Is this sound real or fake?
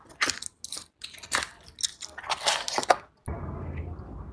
real